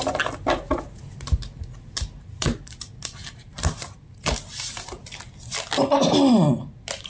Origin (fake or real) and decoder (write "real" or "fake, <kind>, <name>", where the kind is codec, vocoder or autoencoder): real